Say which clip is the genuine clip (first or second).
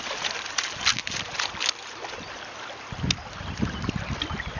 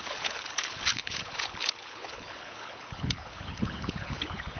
first